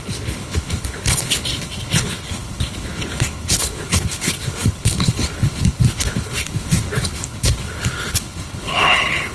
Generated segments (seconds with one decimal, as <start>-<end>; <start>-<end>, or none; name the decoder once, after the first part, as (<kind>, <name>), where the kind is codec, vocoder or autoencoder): 0.0-9.3 (codec, HILCodec)